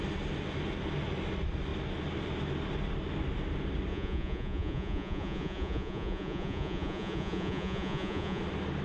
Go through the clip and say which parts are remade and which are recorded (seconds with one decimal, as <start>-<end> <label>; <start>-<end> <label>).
0.0-3.9 recorded; 3.9-8.4 remade; 8.4-8.8 recorded